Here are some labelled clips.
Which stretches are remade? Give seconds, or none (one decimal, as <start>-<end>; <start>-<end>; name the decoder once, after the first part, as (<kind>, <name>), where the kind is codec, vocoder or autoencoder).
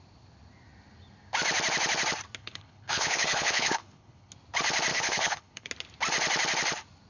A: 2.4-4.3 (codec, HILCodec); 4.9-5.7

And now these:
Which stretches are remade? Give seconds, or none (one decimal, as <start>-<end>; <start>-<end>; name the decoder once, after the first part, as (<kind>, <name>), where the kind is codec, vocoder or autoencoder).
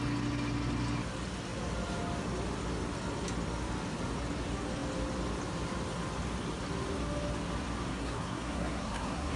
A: 7.9-9.4 (codec, SNAC)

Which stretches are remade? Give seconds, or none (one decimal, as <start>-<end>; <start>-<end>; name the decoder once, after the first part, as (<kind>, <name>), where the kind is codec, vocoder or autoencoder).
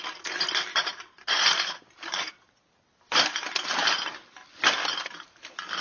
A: 0.7-2.3 (vocoder, BigVGAN v2)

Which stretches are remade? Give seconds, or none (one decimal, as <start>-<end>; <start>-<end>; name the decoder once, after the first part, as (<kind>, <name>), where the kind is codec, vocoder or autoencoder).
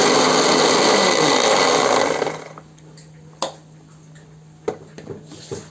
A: none